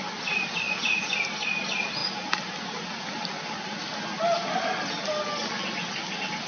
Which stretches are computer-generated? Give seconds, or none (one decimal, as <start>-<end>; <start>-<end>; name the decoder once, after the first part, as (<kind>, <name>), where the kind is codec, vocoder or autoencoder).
none